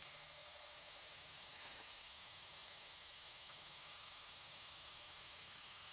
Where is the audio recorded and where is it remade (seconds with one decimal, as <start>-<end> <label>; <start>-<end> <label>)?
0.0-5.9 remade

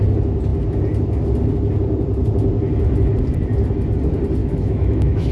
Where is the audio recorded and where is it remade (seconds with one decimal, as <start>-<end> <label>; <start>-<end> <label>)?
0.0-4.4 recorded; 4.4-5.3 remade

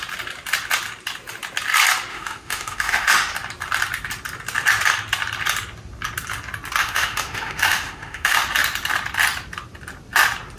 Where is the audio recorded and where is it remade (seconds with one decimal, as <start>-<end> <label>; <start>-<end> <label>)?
0.0-2.1 recorded; 2.1-3.3 remade; 3.3-6.8 recorded; 6.8-8.4 remade; 8.4-10.6 recorded

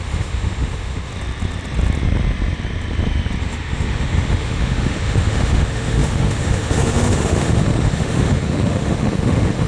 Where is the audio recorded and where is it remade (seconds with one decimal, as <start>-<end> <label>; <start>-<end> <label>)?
0.0-1.1 remade; 1.1-3.4 recorded; 3.4-9.7 remade

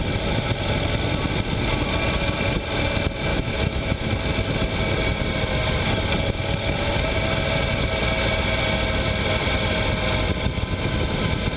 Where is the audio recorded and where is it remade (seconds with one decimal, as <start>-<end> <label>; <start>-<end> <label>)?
0.0-3.3 recorded; 3.3-4.1 remade; 4.1-11.6 recorded